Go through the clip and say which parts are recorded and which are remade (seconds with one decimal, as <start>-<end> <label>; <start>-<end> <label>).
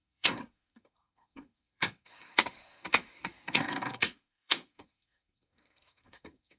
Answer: 0.0-6.6 remade